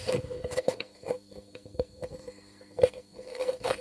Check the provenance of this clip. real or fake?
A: fake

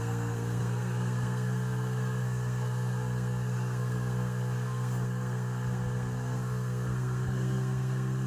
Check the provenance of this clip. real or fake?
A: fake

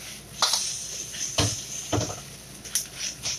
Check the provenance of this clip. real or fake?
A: real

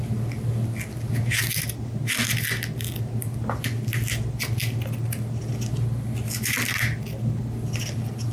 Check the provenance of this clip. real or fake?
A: real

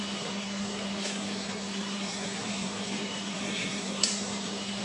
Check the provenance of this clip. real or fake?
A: fake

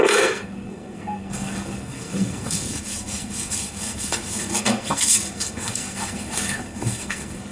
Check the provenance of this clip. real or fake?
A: fake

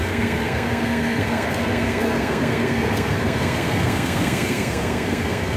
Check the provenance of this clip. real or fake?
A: fake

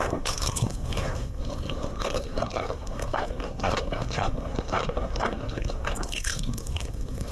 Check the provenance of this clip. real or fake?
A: fake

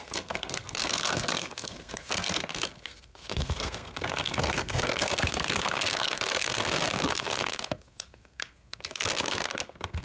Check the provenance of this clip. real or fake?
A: fake